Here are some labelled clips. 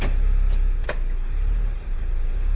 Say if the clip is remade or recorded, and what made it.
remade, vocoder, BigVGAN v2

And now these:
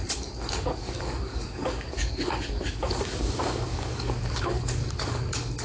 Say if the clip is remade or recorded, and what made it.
remade, codec, DAC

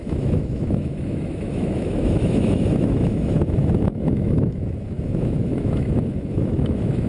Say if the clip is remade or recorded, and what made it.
remade, autoencoder, DAC-VAE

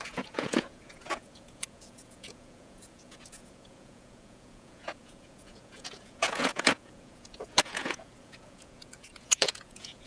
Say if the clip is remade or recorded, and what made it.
remade, vocoder, Vocos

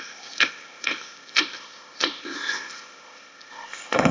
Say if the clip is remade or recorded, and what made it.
remade, codec, ZipCodec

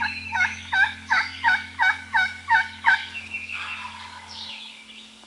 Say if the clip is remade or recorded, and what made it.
remade, codec, DAC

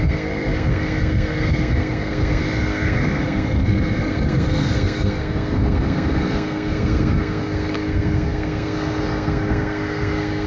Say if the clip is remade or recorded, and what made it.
remade, codec, SNAC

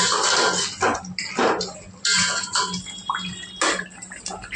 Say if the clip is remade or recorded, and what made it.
recorded